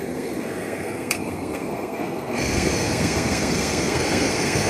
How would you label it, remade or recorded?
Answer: remade